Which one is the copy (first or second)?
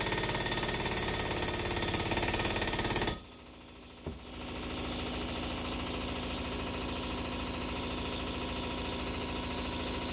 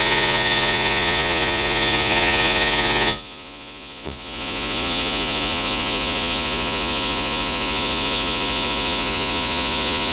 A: second